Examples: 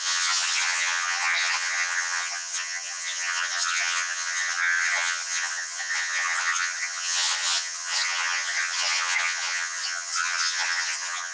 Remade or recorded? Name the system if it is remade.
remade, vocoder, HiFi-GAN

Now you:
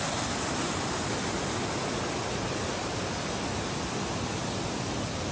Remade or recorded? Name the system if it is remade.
recorded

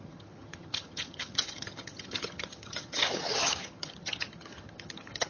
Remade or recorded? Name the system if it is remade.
remade, vocoder, HiFi-GAN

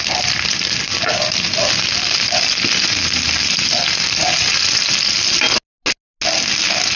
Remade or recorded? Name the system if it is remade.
recorded